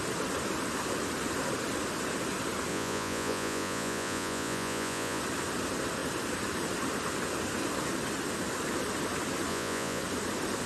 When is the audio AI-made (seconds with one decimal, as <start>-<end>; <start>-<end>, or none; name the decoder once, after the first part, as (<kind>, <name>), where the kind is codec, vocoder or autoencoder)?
2.7-5.2 (vocoder, Vocos); 9.5-10.0